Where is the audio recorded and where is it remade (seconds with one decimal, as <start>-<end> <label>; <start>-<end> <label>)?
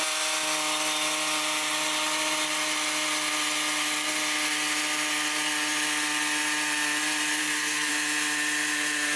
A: 0.0-7.4 recorded; 7.4-7.9 remade; 7.9-9.2 recorded